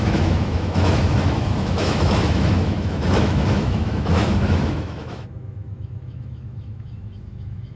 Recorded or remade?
remade